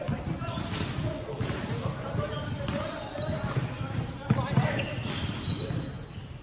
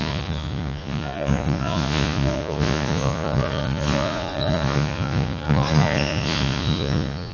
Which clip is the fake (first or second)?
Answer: second